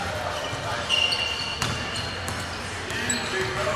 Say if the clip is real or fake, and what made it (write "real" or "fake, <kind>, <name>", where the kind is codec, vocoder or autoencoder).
real